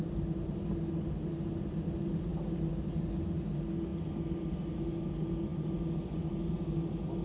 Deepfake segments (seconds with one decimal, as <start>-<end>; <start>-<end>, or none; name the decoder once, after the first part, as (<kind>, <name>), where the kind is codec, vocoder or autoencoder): none